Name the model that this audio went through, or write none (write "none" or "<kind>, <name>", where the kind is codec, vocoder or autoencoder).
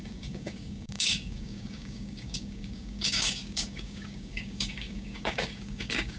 codec, DAC